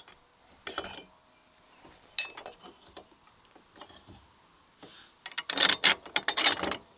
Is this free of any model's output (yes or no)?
yes